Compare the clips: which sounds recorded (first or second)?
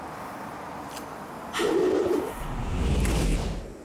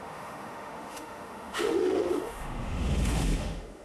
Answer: first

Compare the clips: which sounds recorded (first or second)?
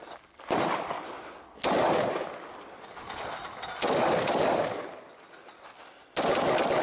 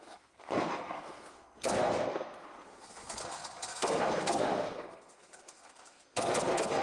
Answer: first